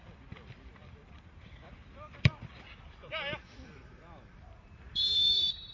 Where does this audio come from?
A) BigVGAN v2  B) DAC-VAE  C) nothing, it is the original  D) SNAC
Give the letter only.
A